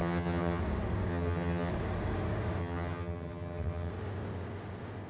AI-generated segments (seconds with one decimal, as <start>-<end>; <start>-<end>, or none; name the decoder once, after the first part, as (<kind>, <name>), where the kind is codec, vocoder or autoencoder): 0.0-0.6 (vocoder, HiFi-GAN); 1.1-1.7; 2.6-3.9